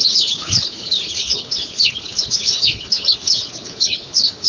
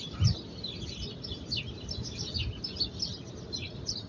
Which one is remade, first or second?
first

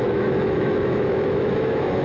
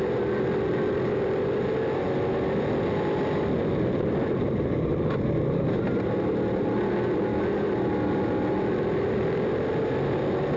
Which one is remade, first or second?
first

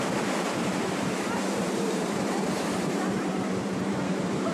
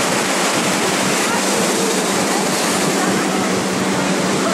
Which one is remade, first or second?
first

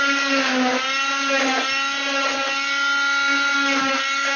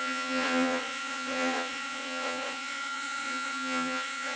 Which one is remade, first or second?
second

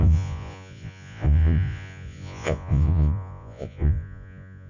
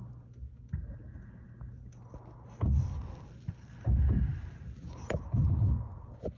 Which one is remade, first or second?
first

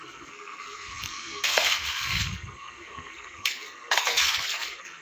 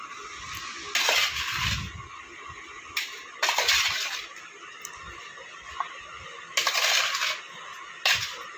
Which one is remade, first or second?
first